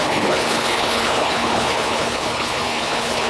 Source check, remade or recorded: remade